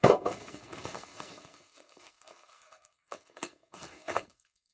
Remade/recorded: remade